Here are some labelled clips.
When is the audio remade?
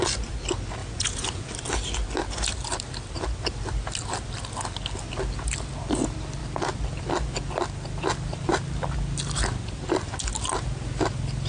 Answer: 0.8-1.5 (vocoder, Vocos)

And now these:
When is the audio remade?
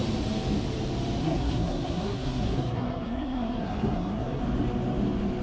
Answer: 1.2-4.4 (codec, SNAC)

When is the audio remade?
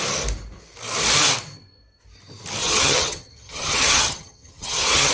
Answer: 2.6-5.1 (vocoder, HiFi-GAN)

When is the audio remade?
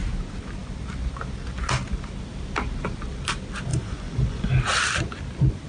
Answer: 3.7-4.5 (vocoder, Vocos)